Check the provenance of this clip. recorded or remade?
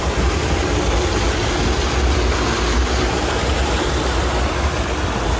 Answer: recorded